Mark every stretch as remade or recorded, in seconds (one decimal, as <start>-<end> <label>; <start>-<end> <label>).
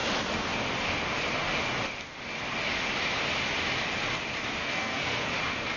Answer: 0.0-4.6 recorded; 4.6-5.3 remade; 5.3-5.8 recorded